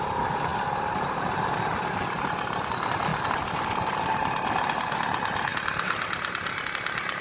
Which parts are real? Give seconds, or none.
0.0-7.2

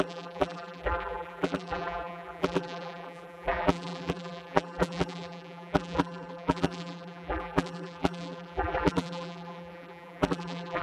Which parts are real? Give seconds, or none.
none

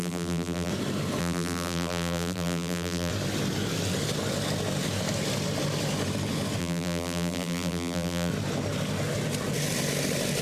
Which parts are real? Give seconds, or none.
0.7-1.2; 3.1-6.6; 8.3-10.4

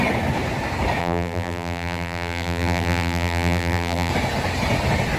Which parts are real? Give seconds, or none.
0.0-1.0; 4.1-5.2

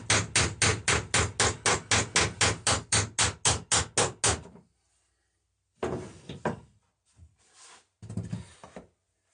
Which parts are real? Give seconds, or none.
0.0-9.3

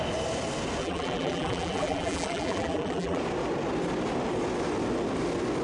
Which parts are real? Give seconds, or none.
0.0-0.8; 3.2-5.6